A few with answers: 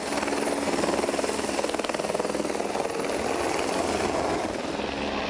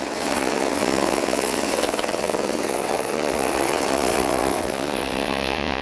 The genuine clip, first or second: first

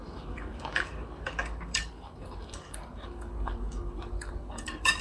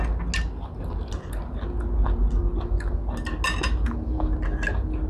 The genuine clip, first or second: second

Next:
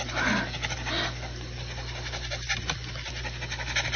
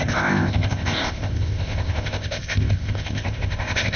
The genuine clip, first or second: first